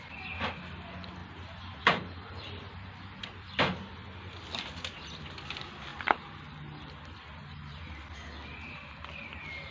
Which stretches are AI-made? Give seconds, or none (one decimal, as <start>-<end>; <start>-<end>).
1.2-2.7; 5.9-6.4